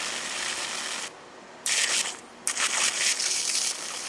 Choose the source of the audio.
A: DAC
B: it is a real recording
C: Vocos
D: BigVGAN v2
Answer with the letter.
B